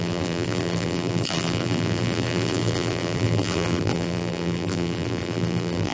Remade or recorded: remade